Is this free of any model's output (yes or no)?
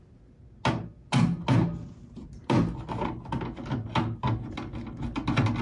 yes